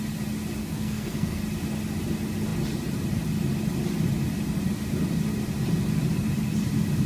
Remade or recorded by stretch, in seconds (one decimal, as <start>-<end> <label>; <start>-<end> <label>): 0.0-0.6 recorded; 0.6-1.4 remade; 1.4-7.1 recorded